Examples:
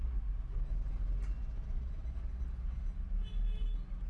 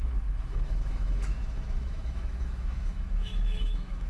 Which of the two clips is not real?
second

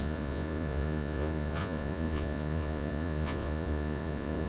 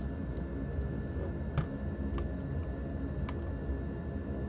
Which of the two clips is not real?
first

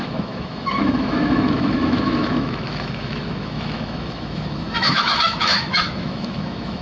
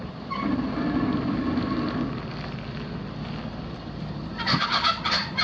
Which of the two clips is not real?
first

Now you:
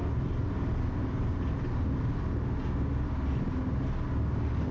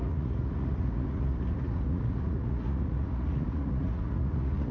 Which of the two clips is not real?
second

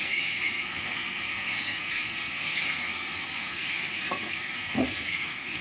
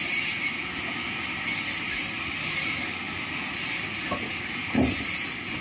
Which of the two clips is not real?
first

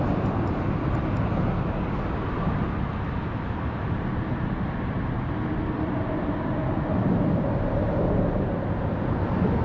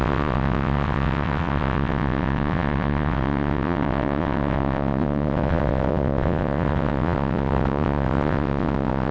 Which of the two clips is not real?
second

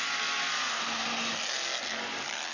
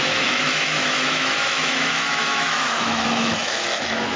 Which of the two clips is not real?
second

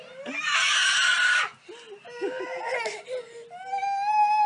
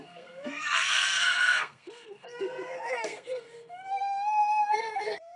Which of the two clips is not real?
second